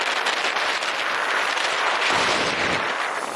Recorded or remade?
recorded